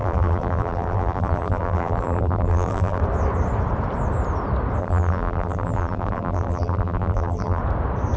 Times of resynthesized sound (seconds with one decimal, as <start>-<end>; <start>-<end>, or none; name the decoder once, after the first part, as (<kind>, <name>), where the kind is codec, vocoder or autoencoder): 0.0-3.0 (vocoder, BigVGAN v2); 4.8-7.6